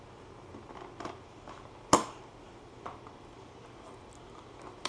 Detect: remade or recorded recorded